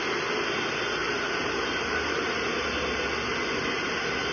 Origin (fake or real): real